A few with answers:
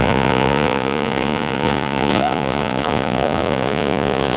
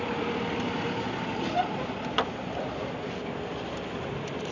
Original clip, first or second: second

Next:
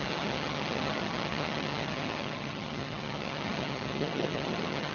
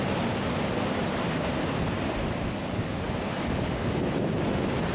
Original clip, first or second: second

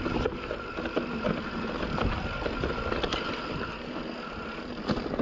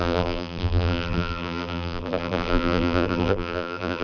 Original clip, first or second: first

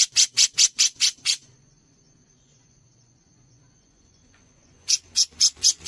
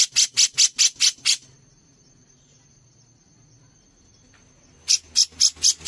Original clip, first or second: second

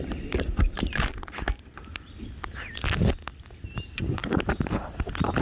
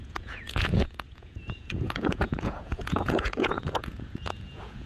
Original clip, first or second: first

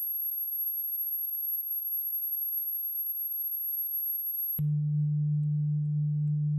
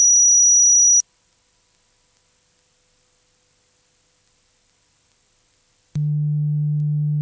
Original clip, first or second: second